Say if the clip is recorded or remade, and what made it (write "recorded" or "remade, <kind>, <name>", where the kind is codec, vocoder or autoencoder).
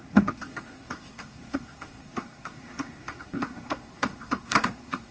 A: remade, codec, SNAC